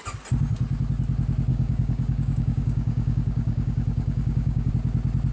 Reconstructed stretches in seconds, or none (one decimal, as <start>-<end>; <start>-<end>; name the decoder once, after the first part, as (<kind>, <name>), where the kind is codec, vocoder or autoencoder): 1.5-4.7 (codec, DAC)

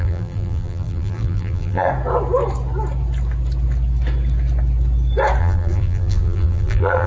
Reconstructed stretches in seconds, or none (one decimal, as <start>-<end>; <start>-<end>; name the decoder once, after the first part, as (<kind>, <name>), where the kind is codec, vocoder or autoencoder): 0.0-1.9 (vocoder, BigVGAN v2); 5.4-7.1

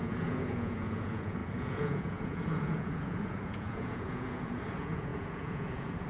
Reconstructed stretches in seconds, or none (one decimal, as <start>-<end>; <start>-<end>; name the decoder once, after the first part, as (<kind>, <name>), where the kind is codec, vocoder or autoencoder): 0.0-6.1 (vocoder, Vocos)

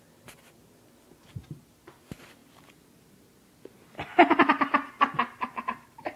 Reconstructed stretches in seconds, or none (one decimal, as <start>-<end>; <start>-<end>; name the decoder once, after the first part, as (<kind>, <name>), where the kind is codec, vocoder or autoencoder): none

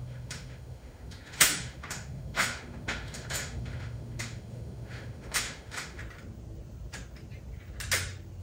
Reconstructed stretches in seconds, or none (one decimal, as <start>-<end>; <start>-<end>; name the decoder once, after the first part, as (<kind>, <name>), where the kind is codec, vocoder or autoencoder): 0.0-6.0 (autoencoder, DAC-VAE)